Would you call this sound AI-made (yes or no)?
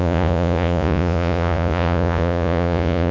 yes